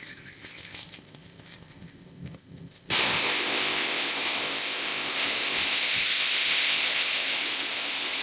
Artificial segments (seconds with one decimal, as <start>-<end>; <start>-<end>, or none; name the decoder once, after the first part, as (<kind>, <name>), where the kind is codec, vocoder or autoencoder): 0.0-8.2 (codec, ZipCodec)